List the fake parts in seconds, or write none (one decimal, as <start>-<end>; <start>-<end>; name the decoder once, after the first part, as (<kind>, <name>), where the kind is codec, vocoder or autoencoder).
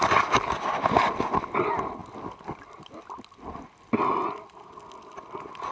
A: none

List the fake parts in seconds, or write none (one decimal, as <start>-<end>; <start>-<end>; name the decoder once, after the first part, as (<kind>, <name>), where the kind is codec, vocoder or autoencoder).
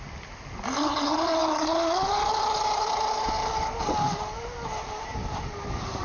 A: none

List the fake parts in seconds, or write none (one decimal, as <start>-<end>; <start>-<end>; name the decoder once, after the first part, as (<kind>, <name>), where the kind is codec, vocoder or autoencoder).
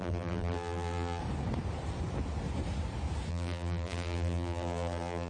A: 0.0-1.2 (vocoder, BigVGAN v2); 3.3-5.3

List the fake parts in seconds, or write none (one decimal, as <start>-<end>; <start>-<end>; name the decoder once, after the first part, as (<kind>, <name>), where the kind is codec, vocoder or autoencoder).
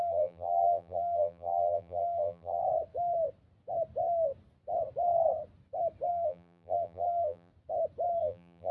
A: 0.0-2.6 (vocoder, BigVGAN v2); 6.1-7.5; 8.2-8.7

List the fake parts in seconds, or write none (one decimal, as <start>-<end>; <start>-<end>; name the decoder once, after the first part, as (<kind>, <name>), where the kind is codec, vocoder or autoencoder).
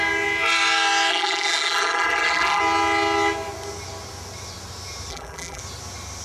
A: 1.1-2.6 (vocoder, BigVGAN v2); 5.1-5.6